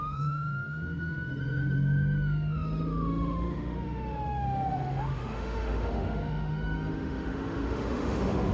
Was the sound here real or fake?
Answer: fake